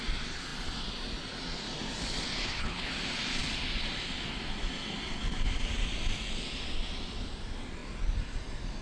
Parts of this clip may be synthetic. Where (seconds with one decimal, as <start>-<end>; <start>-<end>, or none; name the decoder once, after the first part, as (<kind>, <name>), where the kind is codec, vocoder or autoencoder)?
2.4-2.9 (codec, HILCodec)